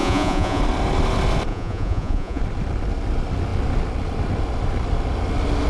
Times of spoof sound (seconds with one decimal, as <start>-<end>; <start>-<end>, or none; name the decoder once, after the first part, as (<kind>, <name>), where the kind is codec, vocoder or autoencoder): 0.0-0.6 (vocoder, Vocos); 1.5-2.4